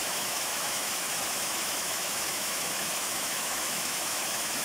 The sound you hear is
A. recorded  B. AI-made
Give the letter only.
B